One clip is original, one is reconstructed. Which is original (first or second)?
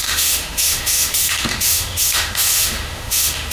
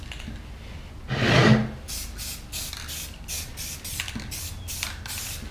second